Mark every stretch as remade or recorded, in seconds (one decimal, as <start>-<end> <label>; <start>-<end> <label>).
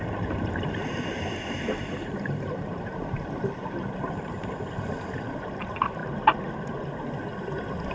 0.0-6.0 remade; 6.0-7.9 recorded